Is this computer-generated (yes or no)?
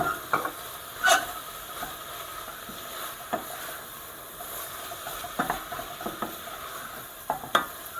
no